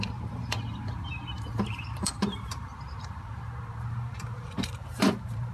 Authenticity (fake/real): fake